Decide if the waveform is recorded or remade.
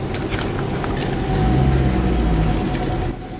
recorded